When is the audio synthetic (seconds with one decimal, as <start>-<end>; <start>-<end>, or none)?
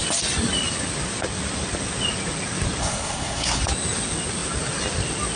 2.8-3.6